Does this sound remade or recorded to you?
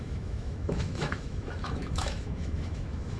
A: remade